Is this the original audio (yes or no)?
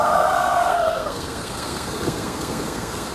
no